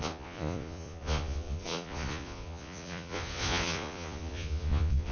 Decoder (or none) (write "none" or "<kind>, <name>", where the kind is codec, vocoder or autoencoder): vocoder, Vocos